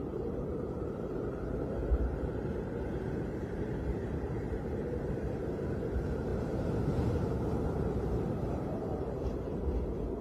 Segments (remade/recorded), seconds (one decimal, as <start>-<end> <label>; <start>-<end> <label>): 0.0-5.1 remade; 5.1-6.3 recorded; 6.3-9.6 remade; 9.6-10.2 recorded